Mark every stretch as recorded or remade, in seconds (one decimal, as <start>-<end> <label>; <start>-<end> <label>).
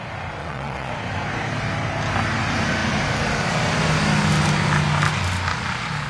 0.0-0.4 recorded; 0.4-0.9 remade; 0.9-6.1 recorded